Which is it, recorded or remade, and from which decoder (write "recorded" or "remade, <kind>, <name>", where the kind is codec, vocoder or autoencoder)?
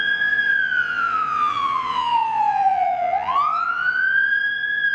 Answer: remade, vocoder, Vocos